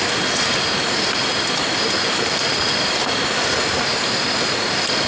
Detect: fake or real real